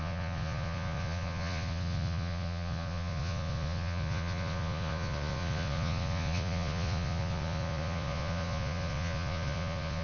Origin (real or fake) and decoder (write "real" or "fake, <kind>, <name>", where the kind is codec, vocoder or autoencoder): fake, vocoder, Vocos